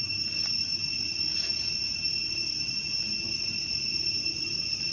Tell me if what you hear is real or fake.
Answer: real